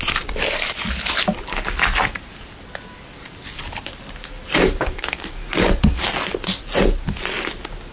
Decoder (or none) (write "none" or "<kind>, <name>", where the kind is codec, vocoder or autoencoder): none